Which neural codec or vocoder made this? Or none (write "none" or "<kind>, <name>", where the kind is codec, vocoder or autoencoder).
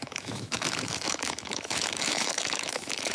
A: autoencoder, DAC-VAE